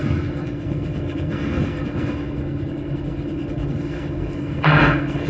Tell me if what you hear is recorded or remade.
remade